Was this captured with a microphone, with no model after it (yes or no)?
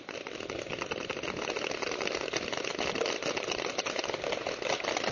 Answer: yes